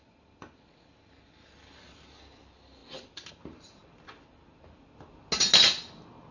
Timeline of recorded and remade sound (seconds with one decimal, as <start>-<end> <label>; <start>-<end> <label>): 0.0-6.3 recorded